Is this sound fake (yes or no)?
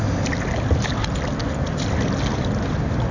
no